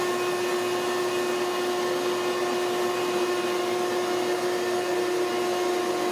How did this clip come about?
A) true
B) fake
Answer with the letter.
A